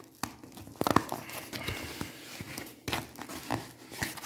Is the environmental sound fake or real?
real